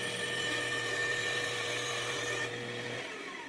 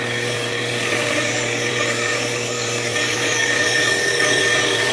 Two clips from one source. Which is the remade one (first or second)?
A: second